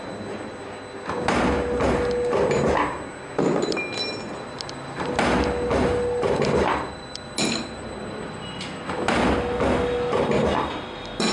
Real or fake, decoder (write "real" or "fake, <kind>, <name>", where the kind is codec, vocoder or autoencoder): real